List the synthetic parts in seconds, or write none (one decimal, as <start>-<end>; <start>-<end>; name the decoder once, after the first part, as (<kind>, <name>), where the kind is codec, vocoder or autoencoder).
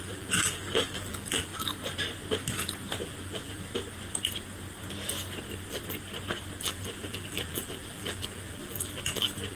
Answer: 0.0-1.5 (vocoder, BigVGAN v2); 3.0-3.7; 6.6-9.6